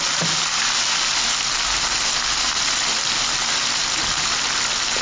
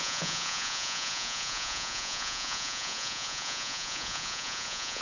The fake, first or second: second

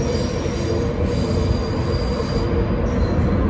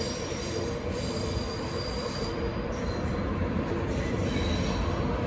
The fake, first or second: second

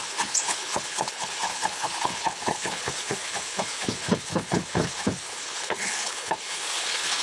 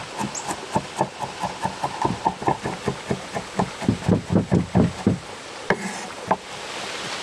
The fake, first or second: first